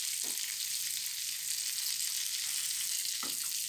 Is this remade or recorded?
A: recorded